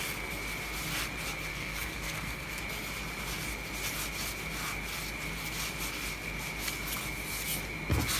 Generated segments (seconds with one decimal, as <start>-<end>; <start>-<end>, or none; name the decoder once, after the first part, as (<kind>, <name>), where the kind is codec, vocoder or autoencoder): 1.5-2.6 (codec, SNAC)